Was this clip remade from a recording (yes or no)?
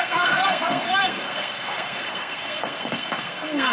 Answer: yes